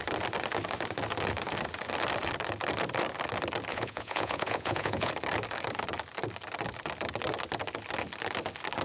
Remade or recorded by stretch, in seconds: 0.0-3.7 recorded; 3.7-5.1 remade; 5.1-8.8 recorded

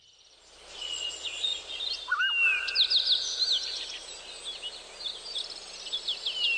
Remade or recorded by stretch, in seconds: 0.0-0.7 recorded; 0.7-1.8 remade; 1.8-6.6 recorded

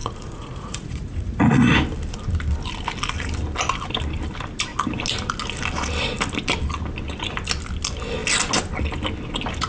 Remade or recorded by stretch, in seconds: 0.0-1.8 remade; 1.8-9.7 recorded

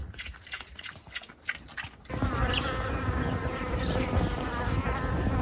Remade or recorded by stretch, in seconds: 0.0-1.3 remade; 1.3-5.4 recorded

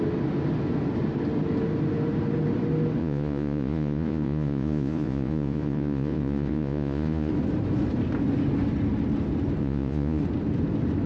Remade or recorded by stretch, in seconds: 0.0-3.0 recorded; 3.0-7.3 remade; 7.3-9.6 recorded; 9.6-10.2 remade; 10.2-11.1 recorded

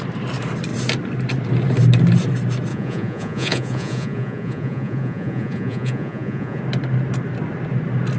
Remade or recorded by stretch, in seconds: 0.0-2.7 recorded; 2.7-6.6 remade; 6.6-8.2 recorded